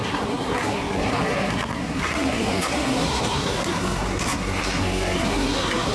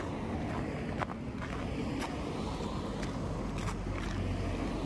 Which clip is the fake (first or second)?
first